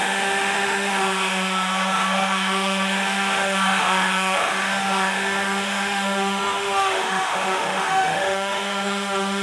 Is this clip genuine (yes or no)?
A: no